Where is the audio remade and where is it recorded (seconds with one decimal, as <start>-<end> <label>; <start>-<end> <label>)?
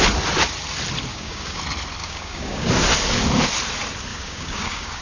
0.0-1.1 recorded; 1.1-1.6 remade; 1.6-2.0 recorded; 2.0-2.7 remade; 2.7-4.1 recorded; 4.1-5.0 remade